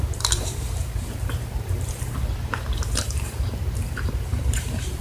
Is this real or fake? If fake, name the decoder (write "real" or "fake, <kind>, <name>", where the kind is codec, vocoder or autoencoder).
fake, vocoder, BigVGAN v2